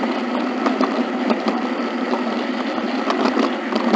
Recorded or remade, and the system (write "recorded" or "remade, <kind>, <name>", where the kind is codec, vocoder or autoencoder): recorded